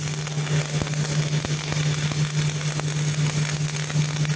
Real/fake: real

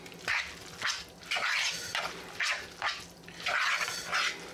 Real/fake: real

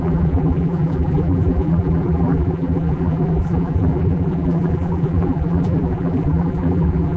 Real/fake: fake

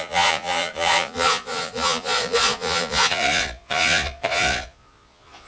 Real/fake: fake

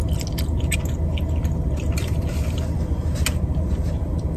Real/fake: real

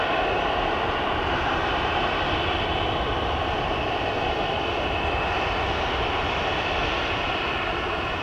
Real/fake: real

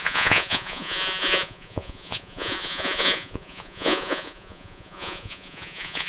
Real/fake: fake